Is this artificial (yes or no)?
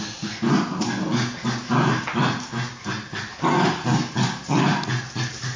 no